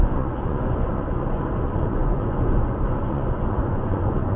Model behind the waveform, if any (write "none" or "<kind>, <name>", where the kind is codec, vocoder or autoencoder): vocoder, Vocos